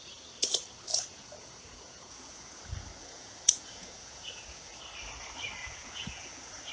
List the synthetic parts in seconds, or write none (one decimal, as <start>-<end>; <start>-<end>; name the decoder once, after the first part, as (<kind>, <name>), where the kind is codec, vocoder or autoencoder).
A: 0.9-2.6 (vocoder, Vocos); 3.0-4.8; 5.6-6.7